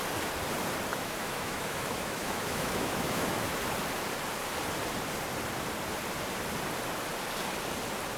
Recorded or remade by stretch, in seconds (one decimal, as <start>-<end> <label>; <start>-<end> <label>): 0.0-0.9 recorded; 0.9-3.6 remade; 3.6-8.2 recorded